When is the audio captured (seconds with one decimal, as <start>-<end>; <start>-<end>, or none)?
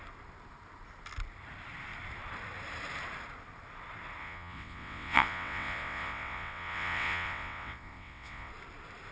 0.0-4.2; 8.5-9.1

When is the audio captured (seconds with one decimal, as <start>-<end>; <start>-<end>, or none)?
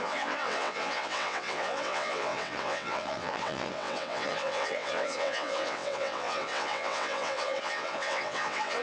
none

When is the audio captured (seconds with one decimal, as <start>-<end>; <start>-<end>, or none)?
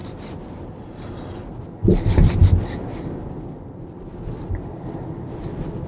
0.0-5.9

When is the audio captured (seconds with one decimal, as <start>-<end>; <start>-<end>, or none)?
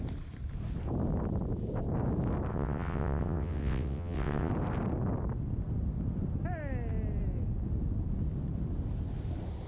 0.0-2.5; 4.5-9.7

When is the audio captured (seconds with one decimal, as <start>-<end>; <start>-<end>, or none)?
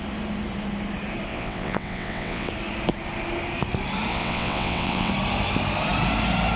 0.0-1.3; 2.5-4.1; 5.1-6.6